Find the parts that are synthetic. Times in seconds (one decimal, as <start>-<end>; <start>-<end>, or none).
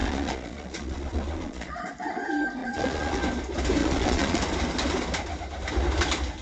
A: 0.0-2.0; 2.6-3.2; 3.8-4.4